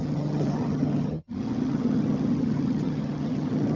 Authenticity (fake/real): fake